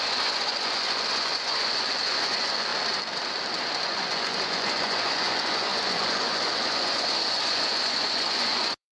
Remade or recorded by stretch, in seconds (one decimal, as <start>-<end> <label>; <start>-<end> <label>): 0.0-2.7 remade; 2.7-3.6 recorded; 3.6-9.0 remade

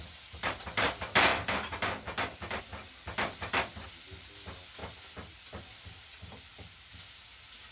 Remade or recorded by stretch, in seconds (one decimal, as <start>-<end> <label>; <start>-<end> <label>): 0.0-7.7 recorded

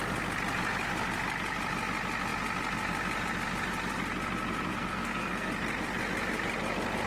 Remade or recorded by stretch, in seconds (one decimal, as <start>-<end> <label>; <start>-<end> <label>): 0.0-4.7 recorded; 4.7-5.5 remade; 5.5-7.1 recorded

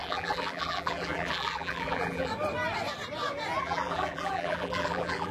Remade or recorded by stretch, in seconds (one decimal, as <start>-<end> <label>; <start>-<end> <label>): 0.0-2.3 remade; 2.3-3.6 recorded; 3.6-5.3 remade

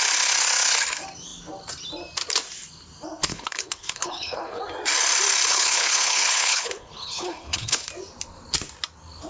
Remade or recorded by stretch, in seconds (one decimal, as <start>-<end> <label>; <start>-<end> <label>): 0.0-3.3 recorded; 3.3-4.6 remade; 4.6-5.5 recorded; 5.5-7.9 remade; 7.9-9.3 recorded

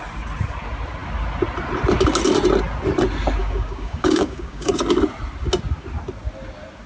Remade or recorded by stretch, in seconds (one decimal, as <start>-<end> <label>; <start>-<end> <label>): 0.0-3.4 recorded; 3.4-4.7 remade; 4.7-6.9 recorded

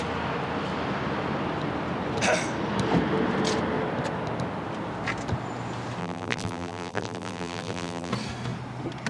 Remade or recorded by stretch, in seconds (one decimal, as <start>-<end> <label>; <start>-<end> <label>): 0.0-6.0 recorded; 6.0-8.1 remade; 8.1-9.1 recorded